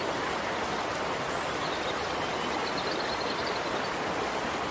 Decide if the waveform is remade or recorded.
recorded